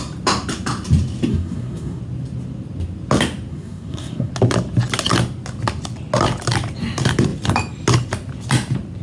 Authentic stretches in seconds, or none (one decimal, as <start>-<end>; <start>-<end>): 0.0-1.3; 2.0-3.5; 4.3-9.0